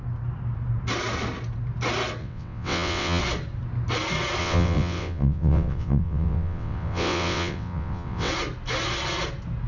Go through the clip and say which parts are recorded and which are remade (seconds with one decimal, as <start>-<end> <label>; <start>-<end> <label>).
0.0-2.2 recorded; 2.2-3.2 remade; 3.2-4.4 recorded; 4.4-8.3 remade; 8.3-9.7 recorded